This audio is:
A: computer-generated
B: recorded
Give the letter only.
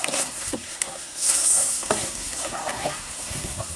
A